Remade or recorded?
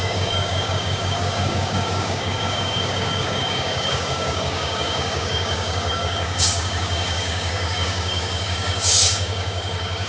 remade